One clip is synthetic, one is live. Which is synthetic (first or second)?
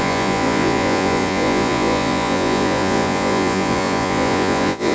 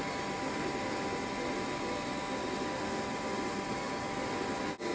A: first